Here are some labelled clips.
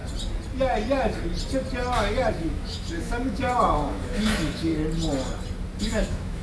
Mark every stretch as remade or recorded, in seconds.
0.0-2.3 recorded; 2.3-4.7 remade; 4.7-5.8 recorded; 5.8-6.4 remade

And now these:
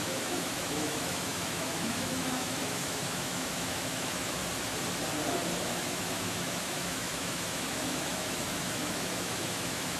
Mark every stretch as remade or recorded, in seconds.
0.0-4.4 remade; 4.4-5.6 recorded; 5.6-10.0 remade

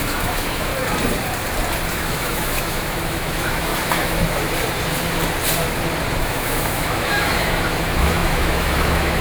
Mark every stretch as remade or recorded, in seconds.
0.0-0.7 remade; 0.7-1.9 recorded; 1.9-3.7 remade; 3.7-6.2 recorded; 6.2-9.2 remade

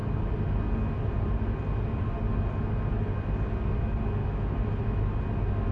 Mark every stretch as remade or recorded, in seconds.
0.0-4.2 recorded; 4.2-5.0 remade; 5.0-5.7 recorded

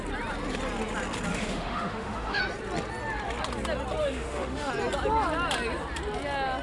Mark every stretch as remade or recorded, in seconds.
0.0-1.3 recorded; 1.3-2.4 remade; 2.4-4.0 recorded; 4.0-4.7 remade; 4.7-6.6 recorded

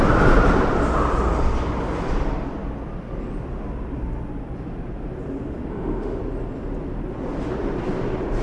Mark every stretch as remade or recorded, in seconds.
0.0-5.7 recorded; 5.7-6.2 remade; 6.2-8.4 recorded